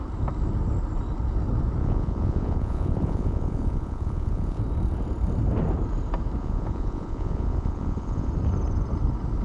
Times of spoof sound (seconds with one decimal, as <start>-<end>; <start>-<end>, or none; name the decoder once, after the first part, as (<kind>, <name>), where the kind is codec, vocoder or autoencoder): 1.8-4.6 (vocoder, Vocos); 6.4-8.3